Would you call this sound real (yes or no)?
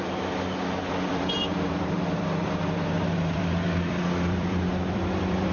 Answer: no